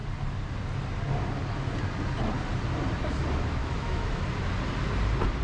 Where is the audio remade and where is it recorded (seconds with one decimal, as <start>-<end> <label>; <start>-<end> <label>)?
0.0-3.6 recorded; 3.6-4.2 remade; 4.2-5.4 recorded